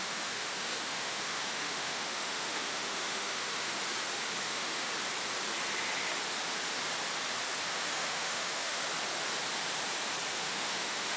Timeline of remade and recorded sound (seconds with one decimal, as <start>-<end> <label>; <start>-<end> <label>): 0.0-3.8 remade; 3.8-4.4 recorded; 4.4-4.9 remade; 4.9-7.7 recorded; 7.7-8.8 remade; 8.8-10.3 recorded; 10.3-11.2 remade